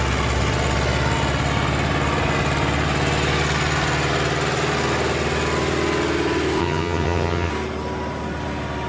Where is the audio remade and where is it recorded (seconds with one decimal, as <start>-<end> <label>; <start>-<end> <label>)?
0.0-6.6 recorded; 6.6-7.5 remade; 7.5-8.9 recorded